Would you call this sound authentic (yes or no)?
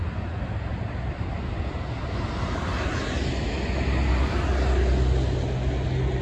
yes